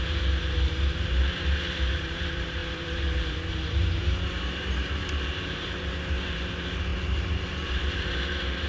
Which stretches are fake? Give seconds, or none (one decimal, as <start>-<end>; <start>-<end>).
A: 0.0-8.7